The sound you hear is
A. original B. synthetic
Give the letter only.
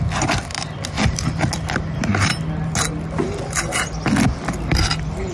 A